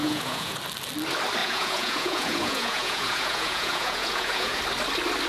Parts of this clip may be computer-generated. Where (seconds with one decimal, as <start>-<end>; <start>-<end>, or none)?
0.0-0.6; 1.4-4.6

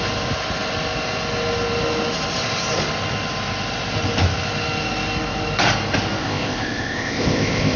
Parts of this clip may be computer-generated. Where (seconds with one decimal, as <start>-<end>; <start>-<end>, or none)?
6.2-7.8

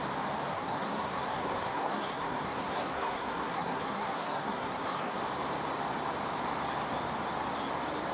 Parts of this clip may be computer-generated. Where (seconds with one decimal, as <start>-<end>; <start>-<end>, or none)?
0.5-5.2

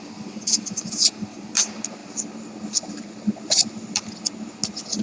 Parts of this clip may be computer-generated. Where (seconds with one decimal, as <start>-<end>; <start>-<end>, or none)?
none

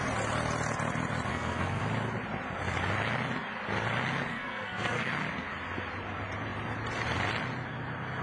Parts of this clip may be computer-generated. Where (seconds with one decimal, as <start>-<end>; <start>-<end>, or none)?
1.3-1.8; 4.3-5.1

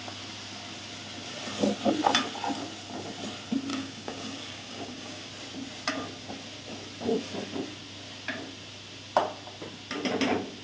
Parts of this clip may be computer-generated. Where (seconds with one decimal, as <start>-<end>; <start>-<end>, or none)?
3.7-5.3

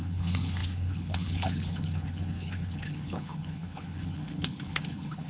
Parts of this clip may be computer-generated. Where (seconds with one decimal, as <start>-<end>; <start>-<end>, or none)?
0.0-5.3